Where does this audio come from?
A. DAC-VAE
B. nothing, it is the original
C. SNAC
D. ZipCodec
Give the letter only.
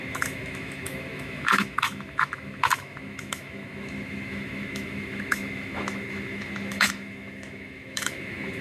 A